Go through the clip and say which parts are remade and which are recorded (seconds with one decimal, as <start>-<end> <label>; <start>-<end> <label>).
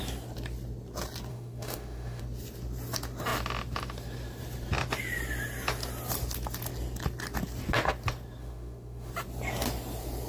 0.0-1.3 recorded; 1.3-2.2 remade; 2.2-8.4 recorded; 8.4-9.1 remade; 9.1-10.3 recorded